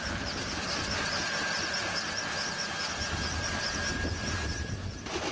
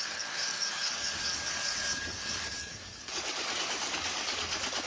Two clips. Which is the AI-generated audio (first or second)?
second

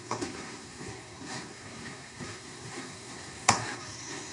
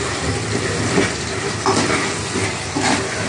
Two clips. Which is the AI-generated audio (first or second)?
first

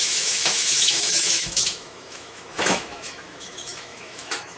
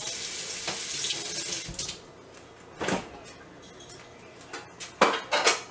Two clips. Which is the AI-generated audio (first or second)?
first